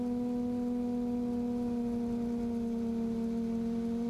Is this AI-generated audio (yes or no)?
no